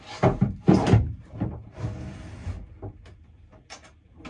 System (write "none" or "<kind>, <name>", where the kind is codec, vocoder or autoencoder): none